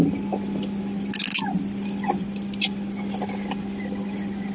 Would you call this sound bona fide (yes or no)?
yes